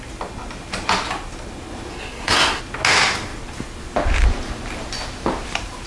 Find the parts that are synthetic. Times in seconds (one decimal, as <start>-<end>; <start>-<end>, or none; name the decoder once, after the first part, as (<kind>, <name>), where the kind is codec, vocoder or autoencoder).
1.9-2.6 (codec, SNAC)